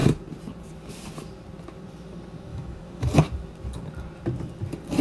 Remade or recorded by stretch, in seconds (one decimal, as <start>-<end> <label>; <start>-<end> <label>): 0.0-2.5 recorded; 2.5-3.1 remade; 3.1-5.0 recorded